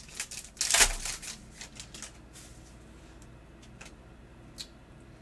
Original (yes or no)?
yes